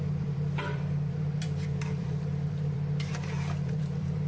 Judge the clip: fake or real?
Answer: fake